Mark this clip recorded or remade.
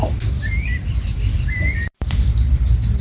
remade